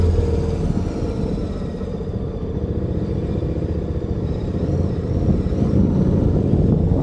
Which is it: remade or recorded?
recorded